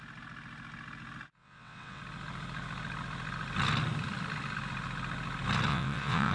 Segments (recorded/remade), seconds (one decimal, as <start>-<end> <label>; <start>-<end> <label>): 0.0-1.4 recorded; 1.4-2.0 remade; 2.0-5.7 recorded; 5.7-6.3 remade